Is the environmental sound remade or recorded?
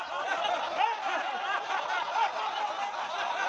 recorded